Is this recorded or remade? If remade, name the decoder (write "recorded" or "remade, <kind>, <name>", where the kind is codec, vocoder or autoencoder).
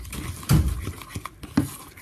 recorded